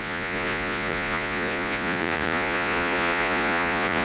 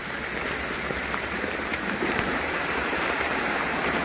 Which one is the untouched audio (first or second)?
second